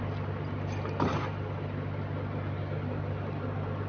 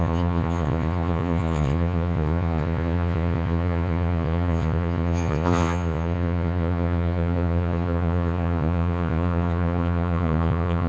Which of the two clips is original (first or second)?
first